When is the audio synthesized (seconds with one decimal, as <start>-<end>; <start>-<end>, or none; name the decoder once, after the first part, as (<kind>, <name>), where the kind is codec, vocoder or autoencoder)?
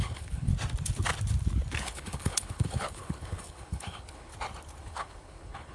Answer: 0.0-0.5 (codec, HILCodec); 1.8-4.3; 4.8-5.7